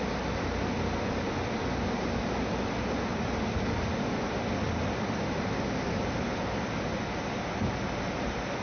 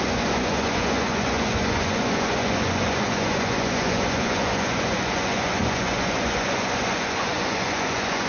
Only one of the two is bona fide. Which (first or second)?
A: first